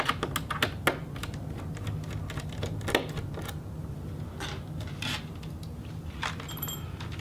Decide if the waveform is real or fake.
real